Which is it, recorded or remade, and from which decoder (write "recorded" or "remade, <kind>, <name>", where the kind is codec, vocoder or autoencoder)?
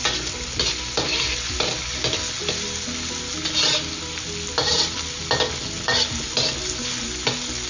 recorded